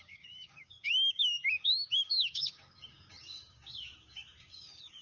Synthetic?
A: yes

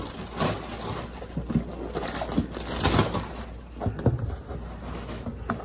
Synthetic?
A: no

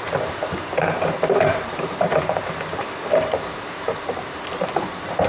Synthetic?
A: yes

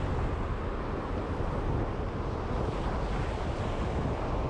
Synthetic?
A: no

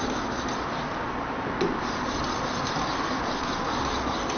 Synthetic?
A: no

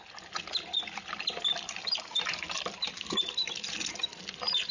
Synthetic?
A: no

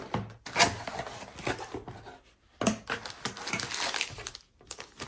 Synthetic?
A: no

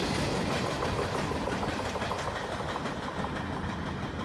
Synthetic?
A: no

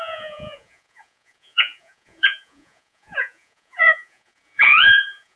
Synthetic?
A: yes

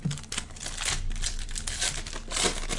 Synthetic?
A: no